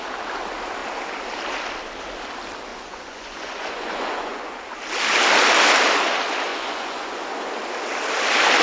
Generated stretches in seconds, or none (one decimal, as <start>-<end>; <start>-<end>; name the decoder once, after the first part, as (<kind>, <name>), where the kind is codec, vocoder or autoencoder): 2.7-4.6 (vocoder, Vocos); 6.5-7.2